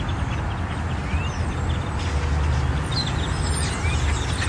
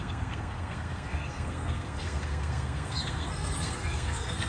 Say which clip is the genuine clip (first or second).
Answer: first